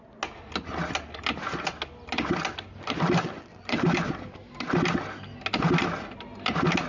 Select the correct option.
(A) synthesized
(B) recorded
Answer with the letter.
B